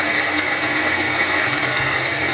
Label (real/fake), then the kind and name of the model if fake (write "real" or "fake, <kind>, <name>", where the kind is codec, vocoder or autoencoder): fake, codec, SNAC